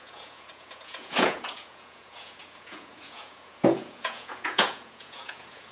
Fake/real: fake